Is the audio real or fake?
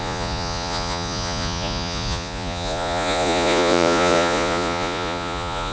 fake